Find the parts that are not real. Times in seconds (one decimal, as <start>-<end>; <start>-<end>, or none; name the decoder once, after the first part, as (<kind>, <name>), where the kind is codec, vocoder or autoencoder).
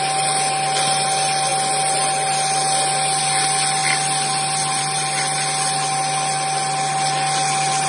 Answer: none